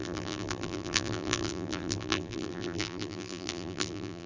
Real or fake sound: fake